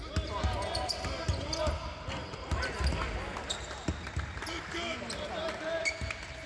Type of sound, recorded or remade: recorded